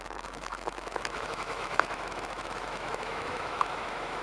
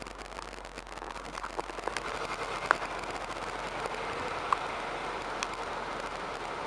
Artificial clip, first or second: first